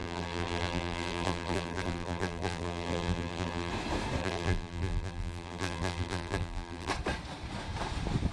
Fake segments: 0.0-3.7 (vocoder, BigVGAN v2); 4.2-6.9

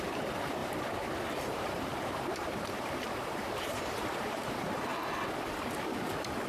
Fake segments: 0.0-0.6 (vocoder, BigVGAN v2); 1.4-4.9; 5.7-6.5